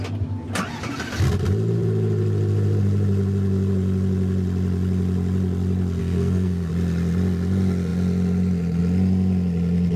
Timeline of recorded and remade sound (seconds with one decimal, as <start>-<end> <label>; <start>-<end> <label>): 0.0-6.0 recorded; 6.0-6.7 remade; 6.7-10.0 recorded